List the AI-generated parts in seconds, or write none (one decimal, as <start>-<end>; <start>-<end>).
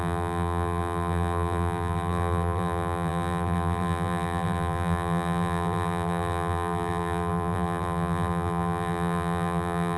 0.0-10.0